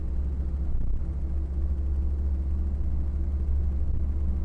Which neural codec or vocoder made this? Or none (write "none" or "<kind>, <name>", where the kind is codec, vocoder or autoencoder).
none